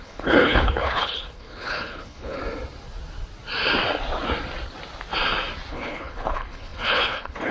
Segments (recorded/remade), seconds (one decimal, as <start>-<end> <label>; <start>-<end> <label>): 0.0-2.4 remade; 2.4-5.7 recorded; 5.7-7.5 remade